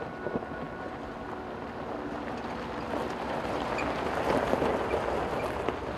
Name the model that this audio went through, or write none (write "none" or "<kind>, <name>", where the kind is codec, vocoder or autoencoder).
none